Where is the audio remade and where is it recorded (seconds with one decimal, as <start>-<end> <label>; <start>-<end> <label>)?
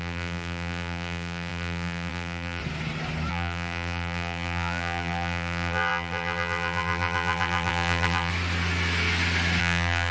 0.0-2.6 remade; 2.6-3.3 recorded; 3.3-8.3 remade; 8.3-9.6 recorded; 9.6-10.1 remade